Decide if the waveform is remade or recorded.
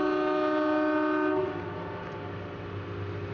recorded